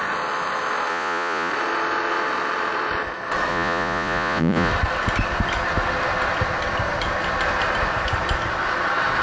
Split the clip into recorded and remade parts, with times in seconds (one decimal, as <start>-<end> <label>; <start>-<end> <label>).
0.0-0.9 recorded; 0.9-1.5 remade; 1.5-3.5 recorded; 3.5-4.7 remade; 4.7-9.2 recorded

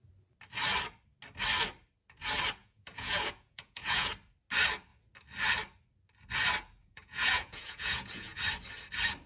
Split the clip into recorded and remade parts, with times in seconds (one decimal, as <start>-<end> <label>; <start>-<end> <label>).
0.0-2.6 recorded; 2.6-4.1 remade; 4.1-6.8 recorded; 6.8-8.4 remade; 8.4-9.3 recorded